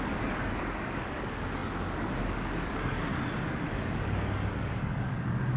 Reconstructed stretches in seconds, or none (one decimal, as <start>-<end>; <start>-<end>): 0.0-3.1; 3.7-5.6